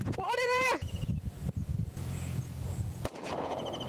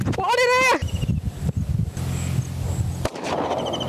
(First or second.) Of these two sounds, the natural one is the second